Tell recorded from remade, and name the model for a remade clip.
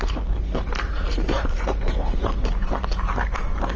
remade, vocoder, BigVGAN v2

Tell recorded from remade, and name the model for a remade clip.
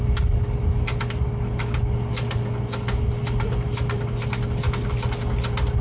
recorded